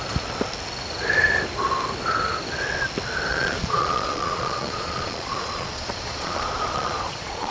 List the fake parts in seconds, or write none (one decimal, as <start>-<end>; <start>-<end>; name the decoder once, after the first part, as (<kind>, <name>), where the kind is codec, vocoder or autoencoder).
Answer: 3.3-7.5 (vocoder, Vocos)